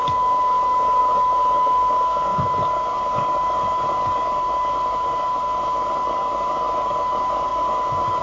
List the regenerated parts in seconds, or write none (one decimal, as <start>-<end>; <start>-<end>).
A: 0.0-8.2